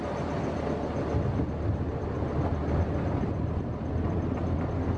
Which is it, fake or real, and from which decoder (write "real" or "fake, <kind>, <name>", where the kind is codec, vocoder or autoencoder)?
real